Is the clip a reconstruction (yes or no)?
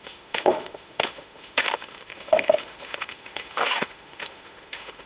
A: yes